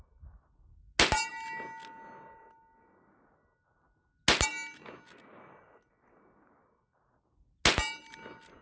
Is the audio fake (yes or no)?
no